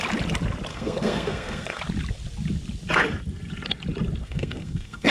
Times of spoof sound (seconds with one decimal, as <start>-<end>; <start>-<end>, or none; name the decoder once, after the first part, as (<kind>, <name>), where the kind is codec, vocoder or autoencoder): 0.7-1.8 (codec, SNAC); 4.2-5.1